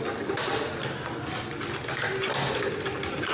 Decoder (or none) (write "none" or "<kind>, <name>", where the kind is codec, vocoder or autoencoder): none